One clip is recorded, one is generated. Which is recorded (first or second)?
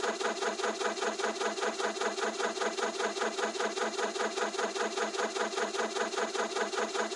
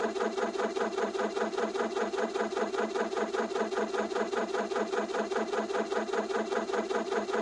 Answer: first